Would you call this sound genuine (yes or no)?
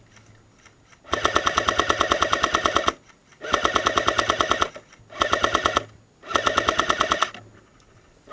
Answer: yes